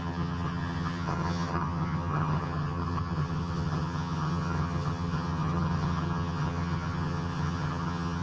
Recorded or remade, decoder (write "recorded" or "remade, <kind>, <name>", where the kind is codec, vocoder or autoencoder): remade, vocoder, HiFi-GAN